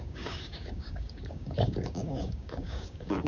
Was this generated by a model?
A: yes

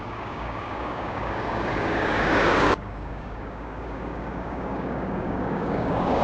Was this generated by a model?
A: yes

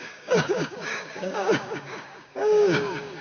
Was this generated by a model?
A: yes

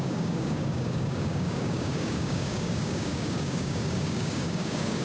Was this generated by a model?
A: yes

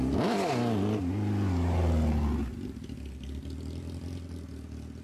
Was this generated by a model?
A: no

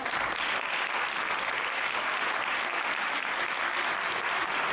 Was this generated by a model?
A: no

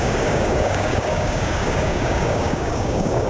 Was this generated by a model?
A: yes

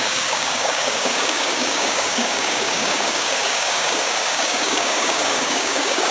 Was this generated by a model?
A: yes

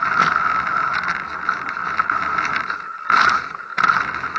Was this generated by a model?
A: no